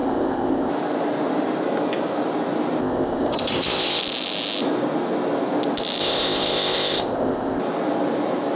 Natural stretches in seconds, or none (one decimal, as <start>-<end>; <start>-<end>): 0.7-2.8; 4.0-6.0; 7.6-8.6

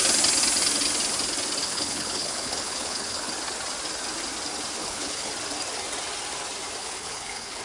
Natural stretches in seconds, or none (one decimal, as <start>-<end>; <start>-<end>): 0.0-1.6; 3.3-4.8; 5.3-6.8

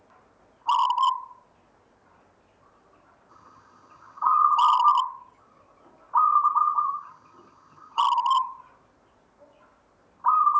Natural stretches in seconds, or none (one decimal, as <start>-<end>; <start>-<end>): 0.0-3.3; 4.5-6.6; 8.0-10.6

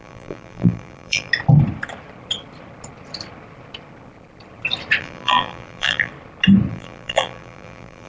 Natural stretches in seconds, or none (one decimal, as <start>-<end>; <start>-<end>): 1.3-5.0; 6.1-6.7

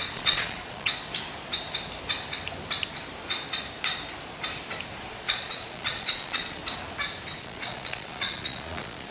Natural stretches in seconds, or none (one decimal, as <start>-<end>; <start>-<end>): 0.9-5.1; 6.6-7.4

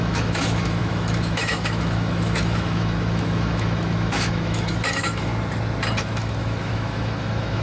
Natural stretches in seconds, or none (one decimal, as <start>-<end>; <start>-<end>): 5.3-6.0

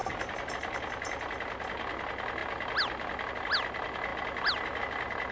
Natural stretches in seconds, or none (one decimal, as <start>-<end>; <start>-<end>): 0.0-5.3